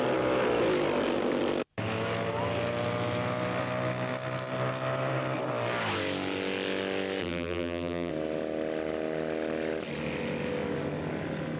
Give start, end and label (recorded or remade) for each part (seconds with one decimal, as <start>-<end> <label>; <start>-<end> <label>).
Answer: 0.0-7.2 recorded; 7.2-8.1 remade; 8.1-11.6 recorded